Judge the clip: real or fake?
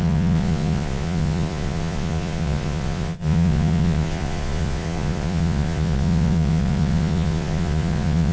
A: fake